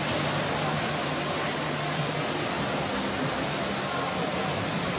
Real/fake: real